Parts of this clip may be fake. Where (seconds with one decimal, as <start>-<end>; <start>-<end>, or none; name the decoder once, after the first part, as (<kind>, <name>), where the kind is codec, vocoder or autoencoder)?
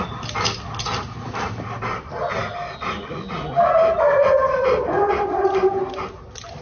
none